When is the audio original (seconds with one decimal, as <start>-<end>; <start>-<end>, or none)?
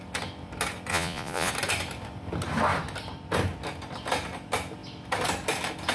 0.0-0.9; 1.5-5.9